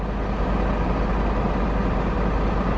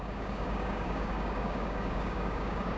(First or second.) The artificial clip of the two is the second